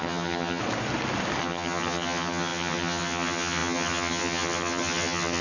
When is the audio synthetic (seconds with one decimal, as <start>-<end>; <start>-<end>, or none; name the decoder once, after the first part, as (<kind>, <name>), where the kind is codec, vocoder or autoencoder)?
0.0-0.6 (vocoder, HiFi-GAN); 1.4-5.4